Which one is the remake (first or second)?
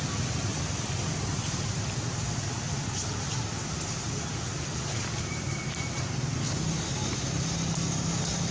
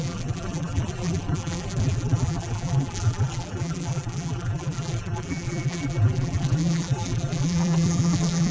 second